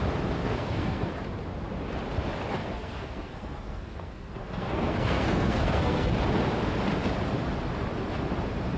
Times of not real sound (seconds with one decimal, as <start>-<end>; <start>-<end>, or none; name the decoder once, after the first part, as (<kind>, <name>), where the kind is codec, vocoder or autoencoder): 0.4-1.1 (codec, SNAC); 2.6-6.1